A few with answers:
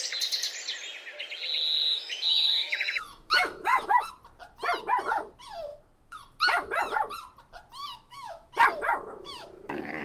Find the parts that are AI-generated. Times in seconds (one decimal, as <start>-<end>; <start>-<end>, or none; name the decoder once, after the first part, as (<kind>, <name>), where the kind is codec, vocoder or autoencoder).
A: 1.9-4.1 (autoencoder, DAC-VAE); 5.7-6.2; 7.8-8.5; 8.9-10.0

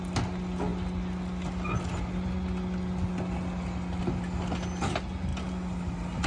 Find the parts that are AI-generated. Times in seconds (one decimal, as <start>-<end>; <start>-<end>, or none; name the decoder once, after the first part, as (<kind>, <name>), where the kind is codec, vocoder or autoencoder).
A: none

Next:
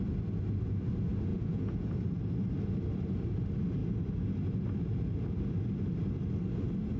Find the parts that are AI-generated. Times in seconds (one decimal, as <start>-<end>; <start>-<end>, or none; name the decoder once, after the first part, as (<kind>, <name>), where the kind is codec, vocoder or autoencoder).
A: 1.3-1.9 (vocoder, Vocos)

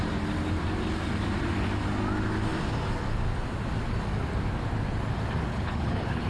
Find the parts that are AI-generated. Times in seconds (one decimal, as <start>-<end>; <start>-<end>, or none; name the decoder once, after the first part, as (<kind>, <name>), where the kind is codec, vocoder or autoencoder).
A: 5.5-6.3 (codec, HILCodec)

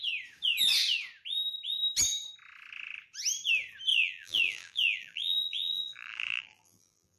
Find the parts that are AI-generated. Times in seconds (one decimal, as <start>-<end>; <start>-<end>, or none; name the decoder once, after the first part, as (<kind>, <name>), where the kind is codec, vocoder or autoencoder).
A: 3.9-7.2 (vocoder, BigVGAN v2)

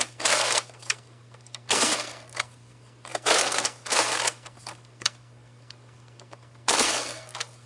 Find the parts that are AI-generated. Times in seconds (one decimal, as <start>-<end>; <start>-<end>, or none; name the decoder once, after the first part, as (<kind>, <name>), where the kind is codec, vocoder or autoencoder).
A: 0.0-7.7 (codec, SNAC)

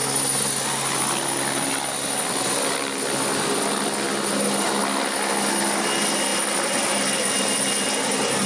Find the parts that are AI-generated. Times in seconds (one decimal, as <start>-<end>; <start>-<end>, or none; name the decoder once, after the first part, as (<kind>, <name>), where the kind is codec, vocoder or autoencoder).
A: none

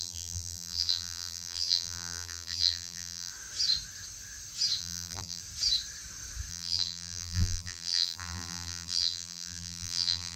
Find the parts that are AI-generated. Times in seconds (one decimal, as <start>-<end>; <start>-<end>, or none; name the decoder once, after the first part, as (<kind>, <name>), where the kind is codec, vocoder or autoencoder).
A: 0.0-3.3 (vocoder, BigVGAN v2); 4.8-5.4; 6.5-10.4